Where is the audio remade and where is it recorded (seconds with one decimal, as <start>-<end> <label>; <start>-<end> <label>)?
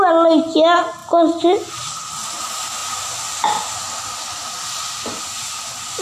0.0-6.0 recorded